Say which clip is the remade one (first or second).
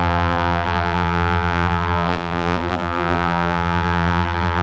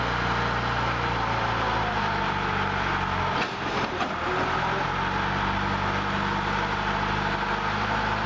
first